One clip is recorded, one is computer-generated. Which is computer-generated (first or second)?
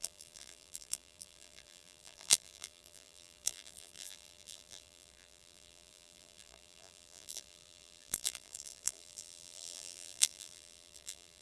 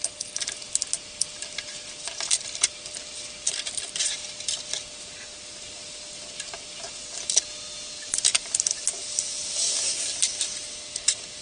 first